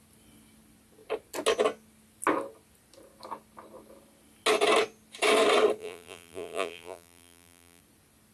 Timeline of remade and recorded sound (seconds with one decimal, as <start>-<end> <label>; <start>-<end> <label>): 0.0-5.8 recorded; 5.8-7.8 remade; 7.8-8.3 recorded